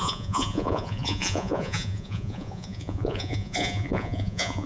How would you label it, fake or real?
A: fake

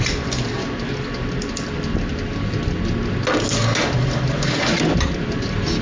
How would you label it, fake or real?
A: real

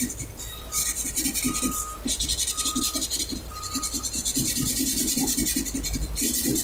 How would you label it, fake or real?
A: real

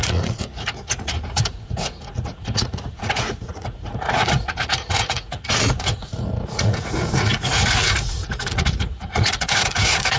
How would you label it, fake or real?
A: fake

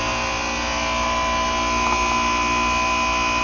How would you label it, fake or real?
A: real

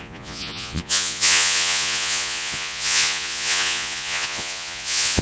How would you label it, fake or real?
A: fake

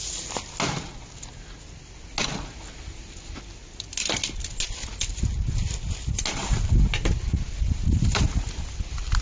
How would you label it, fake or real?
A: real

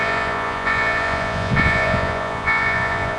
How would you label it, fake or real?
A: fake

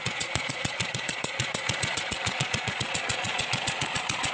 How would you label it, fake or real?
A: fake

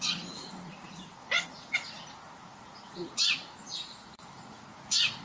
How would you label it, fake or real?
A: fake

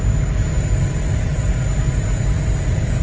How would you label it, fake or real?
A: real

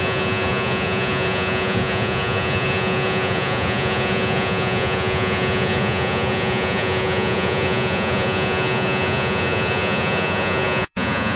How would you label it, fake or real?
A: fake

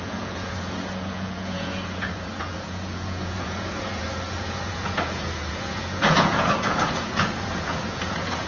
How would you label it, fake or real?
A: fake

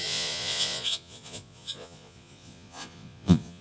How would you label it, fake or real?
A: fake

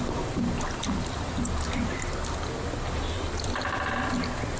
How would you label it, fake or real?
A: real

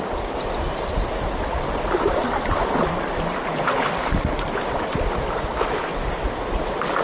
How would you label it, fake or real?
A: real